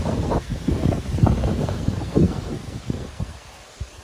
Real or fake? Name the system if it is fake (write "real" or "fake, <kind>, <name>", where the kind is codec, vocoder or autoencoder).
fake, codec, SNAC